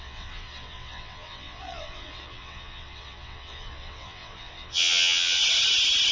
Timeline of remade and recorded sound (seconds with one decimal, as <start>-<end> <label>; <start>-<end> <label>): 0.0-5.4 remade; 5.4-6.1 recorded